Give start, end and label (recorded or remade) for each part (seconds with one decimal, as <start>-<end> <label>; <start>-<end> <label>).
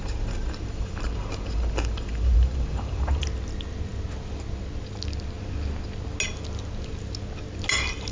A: 0.0-3.2 remade; 3.2-8.1 recorded